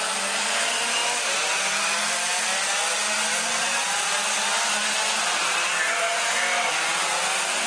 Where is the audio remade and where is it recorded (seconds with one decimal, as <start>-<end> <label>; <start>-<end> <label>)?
0.0-7.7 recorded